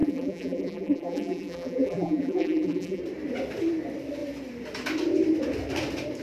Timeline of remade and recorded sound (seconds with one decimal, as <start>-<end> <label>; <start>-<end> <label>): 0.0-3.0 remade; 3.0-6.2 recorded